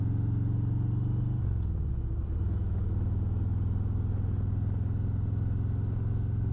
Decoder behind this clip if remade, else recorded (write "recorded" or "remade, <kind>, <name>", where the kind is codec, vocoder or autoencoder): recorded